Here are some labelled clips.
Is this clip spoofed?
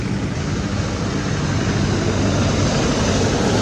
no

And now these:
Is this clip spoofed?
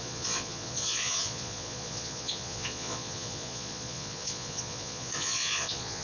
yes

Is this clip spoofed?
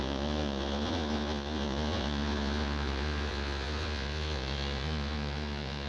yes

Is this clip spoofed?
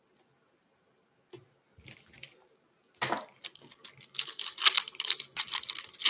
no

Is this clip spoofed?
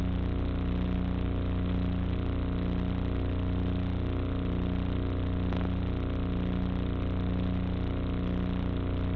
no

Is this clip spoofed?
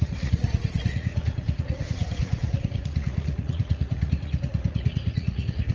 yes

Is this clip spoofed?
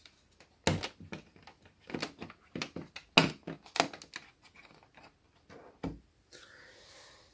no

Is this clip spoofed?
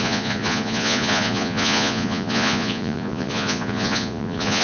yes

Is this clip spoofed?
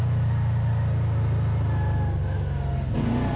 no